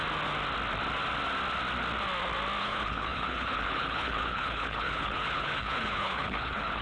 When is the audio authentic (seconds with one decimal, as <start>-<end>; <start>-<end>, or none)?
0.0-2.6